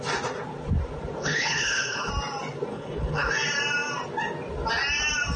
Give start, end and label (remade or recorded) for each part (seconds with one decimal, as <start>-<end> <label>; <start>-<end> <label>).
0.0-1.2 recorded; 1.2-2.1 remade; 2.1-2.7 recorded; 2.7-3.3 remade; 3.3-5.4 recorded

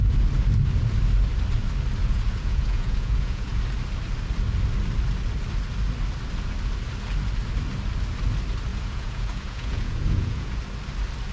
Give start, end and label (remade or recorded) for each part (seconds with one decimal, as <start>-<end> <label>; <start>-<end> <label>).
0.0-2.0 recorded; 2.0-3.6 remade; 3.6-8.7 recorded; 8.7-10.6 remade; 10.6-11.3 recorded

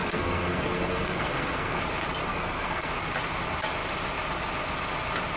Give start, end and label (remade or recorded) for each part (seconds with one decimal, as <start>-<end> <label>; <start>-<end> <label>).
0.0-1.8 remade; 1.8-2.2 recorded; 2.2-2.9 remade; 2.9-5.4 recorded

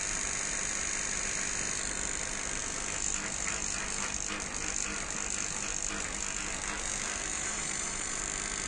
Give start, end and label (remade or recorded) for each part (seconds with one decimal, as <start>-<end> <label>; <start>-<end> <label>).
0.0-7.3 recorded; 7.3-8.2 remade; 8.2-8.7 recorded

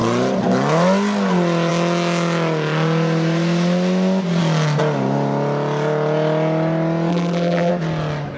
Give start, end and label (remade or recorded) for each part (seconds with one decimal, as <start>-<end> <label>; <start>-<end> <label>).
0.0-7.1 recorded; 7.1-7.7 remade; 7.7-8.4 recorded

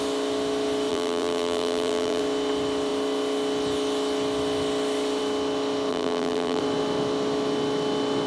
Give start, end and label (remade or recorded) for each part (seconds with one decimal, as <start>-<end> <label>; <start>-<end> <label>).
0.0-0.9 recorded; 0.9-2.2 remade; 2.2-5.9 recorded; 5.9-6.6 remade; 6.6-8.3 recorded